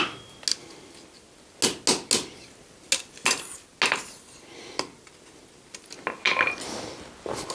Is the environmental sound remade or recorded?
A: recorded